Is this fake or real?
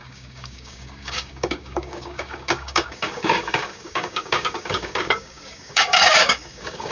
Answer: fake